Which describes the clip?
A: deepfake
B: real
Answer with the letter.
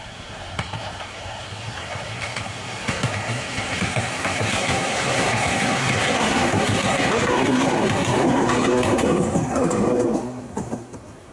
A